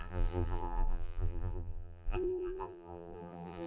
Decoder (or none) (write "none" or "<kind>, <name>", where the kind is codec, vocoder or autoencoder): vocoder, BigVGAN v2